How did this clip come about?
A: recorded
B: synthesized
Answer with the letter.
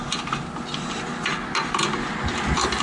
A